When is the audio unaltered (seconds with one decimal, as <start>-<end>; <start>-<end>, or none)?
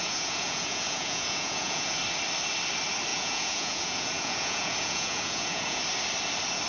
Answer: 2.0-3.1; 5.8-6.7